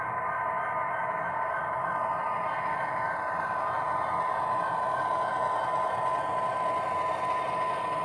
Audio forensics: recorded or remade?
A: recorded